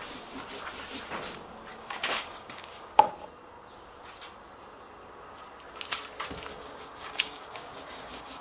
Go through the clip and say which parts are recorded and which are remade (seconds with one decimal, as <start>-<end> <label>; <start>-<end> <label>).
0.0-1.7 recorded; 1.7-3.1 remade; 3.1-6.5 recorded; 6.5-8.4 remade